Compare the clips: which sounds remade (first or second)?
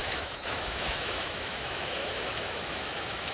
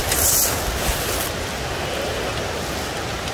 first